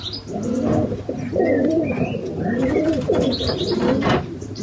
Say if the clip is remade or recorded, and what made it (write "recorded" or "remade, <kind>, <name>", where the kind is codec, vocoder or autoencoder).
remade, vocoder, BigVGAN v2